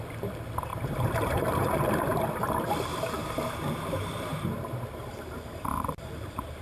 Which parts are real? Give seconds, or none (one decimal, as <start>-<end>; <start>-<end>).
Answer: 0.0-0.7; 1.9-2.7